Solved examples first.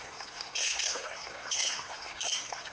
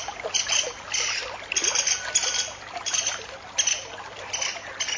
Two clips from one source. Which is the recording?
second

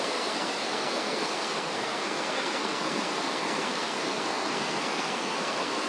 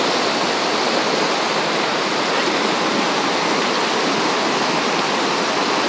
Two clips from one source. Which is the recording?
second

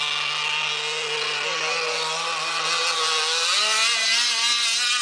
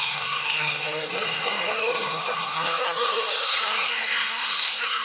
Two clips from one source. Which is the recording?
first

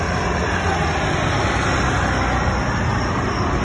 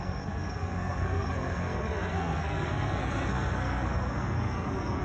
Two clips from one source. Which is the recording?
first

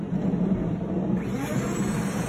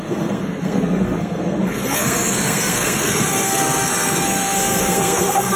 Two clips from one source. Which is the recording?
first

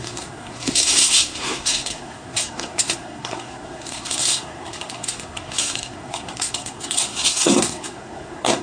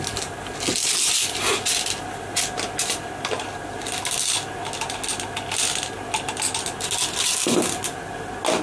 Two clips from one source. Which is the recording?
second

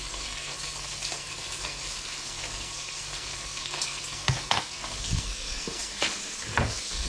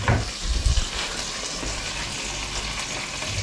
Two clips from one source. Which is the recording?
second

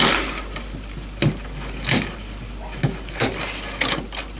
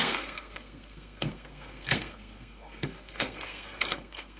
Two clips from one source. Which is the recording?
first